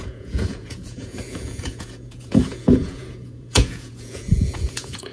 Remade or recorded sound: remade